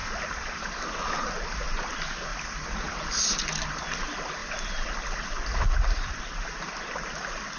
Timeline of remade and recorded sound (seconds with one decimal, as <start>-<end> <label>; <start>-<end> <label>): 0.0-1.1 remade; 1.1-2.3 recorded; 2.3-3.2 remade; 3.2-4.4 recorded; 4.4-6.2 remade; 6.2-7.6 recorded

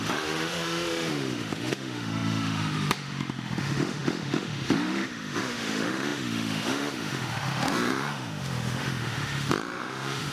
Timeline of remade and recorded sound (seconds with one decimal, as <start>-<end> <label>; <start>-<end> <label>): 0.0-10.3 remade

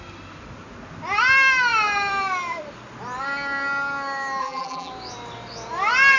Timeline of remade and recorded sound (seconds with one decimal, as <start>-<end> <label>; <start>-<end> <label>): 0.0-4.4 recorded; 4.4-4.9 remade; 4.9-6.2 recorded